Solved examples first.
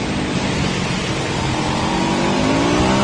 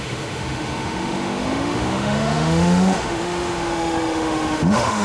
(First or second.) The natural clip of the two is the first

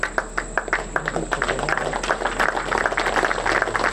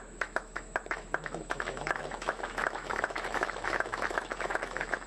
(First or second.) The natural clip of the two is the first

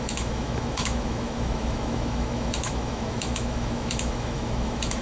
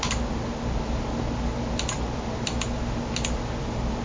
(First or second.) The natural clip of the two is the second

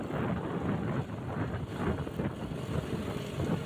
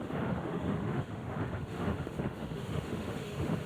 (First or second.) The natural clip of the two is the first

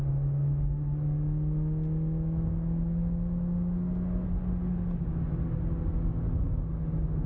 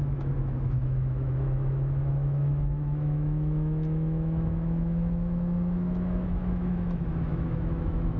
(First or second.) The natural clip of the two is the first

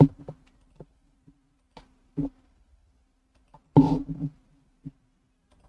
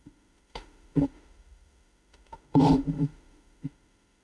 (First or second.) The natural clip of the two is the first